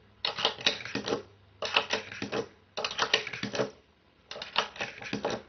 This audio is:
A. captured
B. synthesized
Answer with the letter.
A